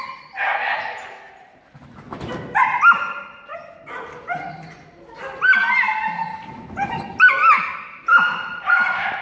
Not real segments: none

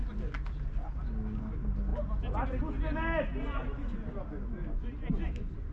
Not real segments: none

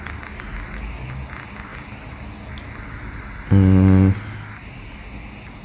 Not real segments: none

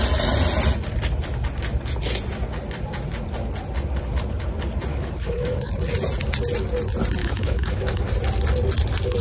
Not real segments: 4.9-5.7 (autoencoder, DAC-VAE); 7.2-8.1

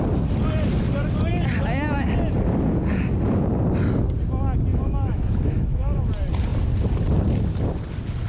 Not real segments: 4.7-6.1 (autoencoder, DAC-VAE)

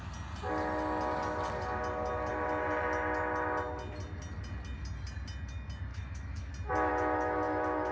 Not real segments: 5.9-6.5 (autoencoder, DAC-VAE); 6.9-7.9

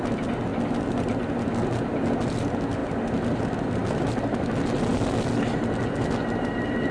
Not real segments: none